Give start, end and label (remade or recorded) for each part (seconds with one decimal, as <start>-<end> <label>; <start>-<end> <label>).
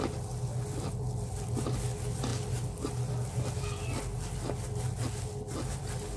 0.0-6.2 recorded